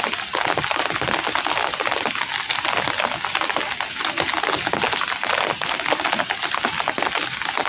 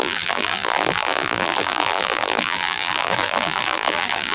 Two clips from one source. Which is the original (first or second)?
first